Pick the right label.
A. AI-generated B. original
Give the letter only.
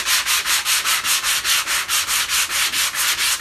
B